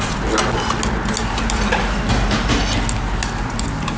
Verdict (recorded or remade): recorded